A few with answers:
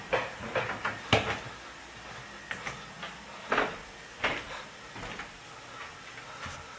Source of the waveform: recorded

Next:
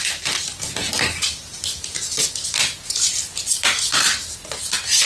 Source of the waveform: recorded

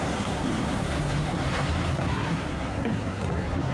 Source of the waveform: remade